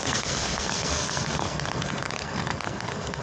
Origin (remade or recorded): remade